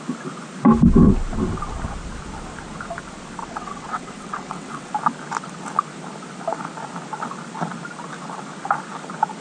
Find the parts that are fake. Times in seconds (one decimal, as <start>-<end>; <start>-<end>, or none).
3.4-4.9